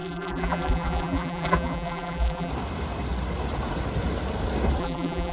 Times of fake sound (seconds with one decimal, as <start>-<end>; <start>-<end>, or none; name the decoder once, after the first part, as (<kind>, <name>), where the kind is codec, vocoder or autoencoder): 0.0-2.5 (vocoder, BigVGAN v2); 4.8-5.3